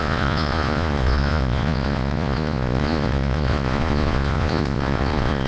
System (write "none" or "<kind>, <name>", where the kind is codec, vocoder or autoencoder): vocoder, Vocos